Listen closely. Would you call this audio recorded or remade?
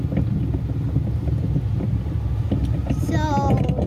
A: recorded